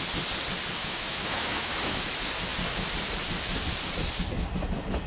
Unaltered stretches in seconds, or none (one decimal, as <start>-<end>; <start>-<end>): 0.0-0.8; 2.0-5.1